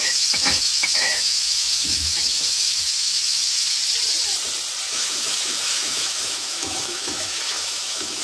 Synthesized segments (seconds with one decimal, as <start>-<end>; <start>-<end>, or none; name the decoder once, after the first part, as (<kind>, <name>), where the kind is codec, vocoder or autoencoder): 0.0-3.8 (autoencoder, DAC-VAE); 4.9-8.2